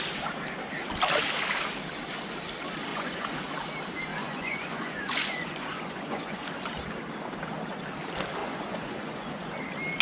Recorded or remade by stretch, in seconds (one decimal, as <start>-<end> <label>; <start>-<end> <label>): 0.0-2.9 recorded; 2.9-3.4 remade; 3.4-4.1 recorded; 4.1-6.5 remade; 6.5-8.4 recorded; 8.4-9.5 remade; 9.5-10.0 recorded

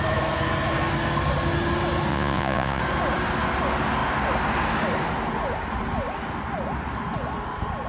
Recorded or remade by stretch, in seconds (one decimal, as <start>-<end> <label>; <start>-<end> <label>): 0.0-2.1 recorded; 2.1-2.8 remade; 2.8-7.9 recorded

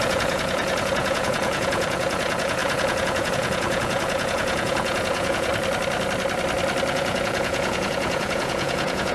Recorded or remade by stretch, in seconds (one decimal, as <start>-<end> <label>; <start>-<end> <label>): 0.0-5.5 remade; 5.5-6.9 recorded; 6.9-9.1 remade

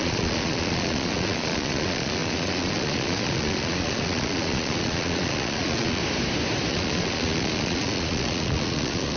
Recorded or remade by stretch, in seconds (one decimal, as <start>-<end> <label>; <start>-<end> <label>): 0.0-6.0 remade; 6.0-6.7 recorded; 6.7-9.2 remade

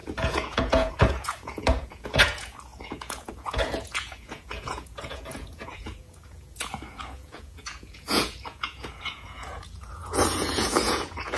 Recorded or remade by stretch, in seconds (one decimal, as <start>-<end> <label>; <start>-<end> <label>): 0.0-11.4 remade

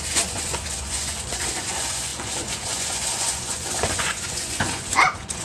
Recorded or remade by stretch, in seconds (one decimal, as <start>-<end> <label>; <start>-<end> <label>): 0.0-5.4 remade